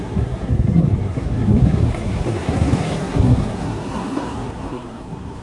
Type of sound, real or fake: fake